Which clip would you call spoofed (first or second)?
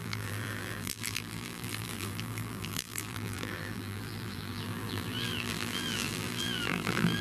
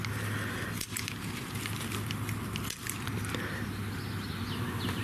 first